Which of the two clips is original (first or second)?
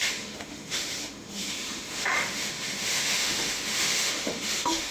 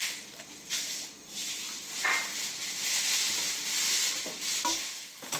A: second